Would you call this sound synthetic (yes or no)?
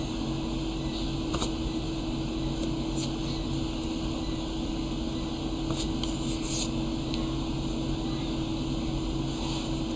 no